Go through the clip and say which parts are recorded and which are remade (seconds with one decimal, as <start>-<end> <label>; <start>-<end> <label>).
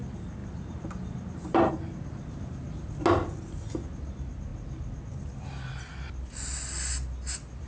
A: 0.0-0.4 recorded; 0.4-1.7 remade; 1.7-7.7 recorded